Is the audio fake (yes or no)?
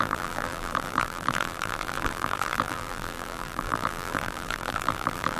yes